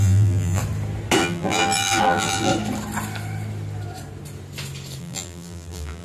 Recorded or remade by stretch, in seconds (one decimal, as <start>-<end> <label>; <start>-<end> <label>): 0.0-0.6 remade; 0.6-1.2 recorded; 1.2-2.5 remade; 2.5-5.0 recorded; 5.0-6.0 remade